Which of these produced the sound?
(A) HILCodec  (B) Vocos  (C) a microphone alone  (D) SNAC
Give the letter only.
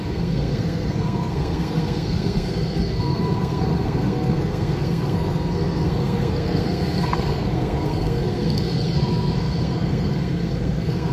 D